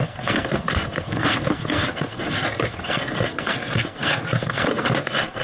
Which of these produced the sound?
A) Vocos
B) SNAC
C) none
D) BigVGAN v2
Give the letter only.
B